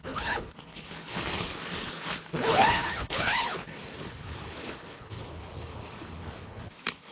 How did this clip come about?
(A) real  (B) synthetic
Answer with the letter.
B